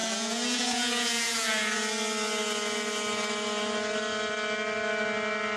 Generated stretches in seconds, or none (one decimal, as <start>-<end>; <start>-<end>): 0.0-1.9